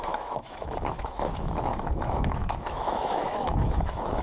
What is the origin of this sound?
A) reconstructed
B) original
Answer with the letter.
A